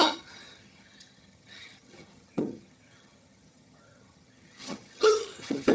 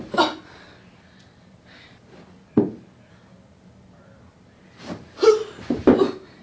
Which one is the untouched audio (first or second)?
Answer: second